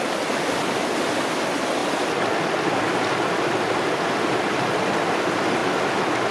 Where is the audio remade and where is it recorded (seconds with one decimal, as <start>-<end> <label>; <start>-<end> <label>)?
0.0-6.3 recorded